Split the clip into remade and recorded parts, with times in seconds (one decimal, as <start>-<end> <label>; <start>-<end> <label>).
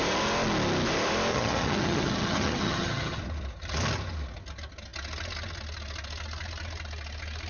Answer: 0.0-1.3 recorded; 1.3-3.2 remade; 3.2-7.5 recorded